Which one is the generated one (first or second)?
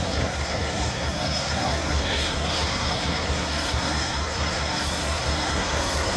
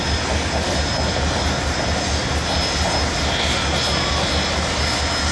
first